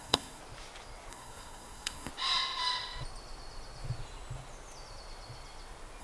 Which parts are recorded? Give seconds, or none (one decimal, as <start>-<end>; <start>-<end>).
0.4-1.1; 2.1-6.0